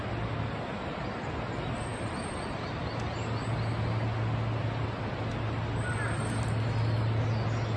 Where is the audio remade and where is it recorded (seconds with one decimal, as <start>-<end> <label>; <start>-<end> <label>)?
0.0-7.8 recorded